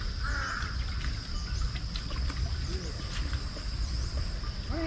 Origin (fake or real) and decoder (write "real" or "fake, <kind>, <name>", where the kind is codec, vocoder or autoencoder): real